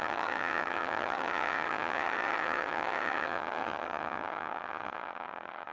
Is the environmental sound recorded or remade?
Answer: remade